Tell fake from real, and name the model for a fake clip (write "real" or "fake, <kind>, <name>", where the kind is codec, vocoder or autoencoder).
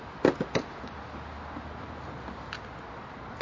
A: real